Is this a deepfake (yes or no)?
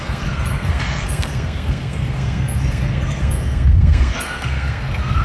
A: yes